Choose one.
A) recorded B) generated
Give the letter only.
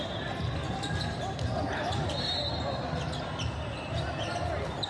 A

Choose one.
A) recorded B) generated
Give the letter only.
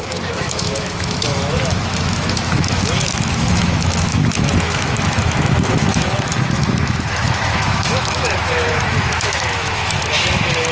B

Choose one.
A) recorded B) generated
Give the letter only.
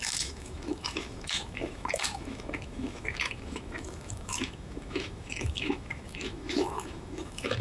B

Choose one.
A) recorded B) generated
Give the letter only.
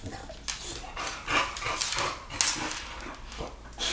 A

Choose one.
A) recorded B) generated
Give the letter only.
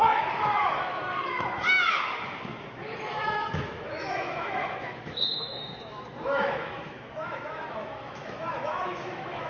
B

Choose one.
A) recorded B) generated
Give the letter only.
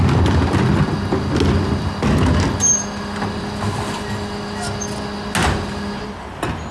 A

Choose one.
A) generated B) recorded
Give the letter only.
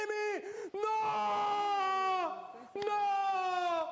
B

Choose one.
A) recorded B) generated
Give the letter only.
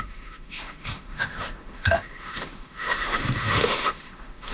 B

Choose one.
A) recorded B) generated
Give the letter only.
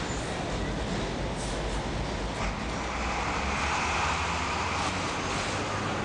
A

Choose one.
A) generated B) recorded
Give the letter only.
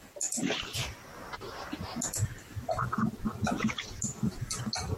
B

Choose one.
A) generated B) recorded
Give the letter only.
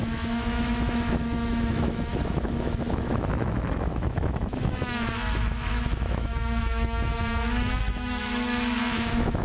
A